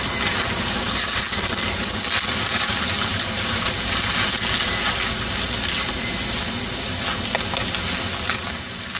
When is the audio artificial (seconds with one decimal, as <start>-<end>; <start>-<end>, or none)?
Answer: 3.1-3.7